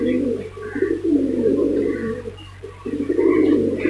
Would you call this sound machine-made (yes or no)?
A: no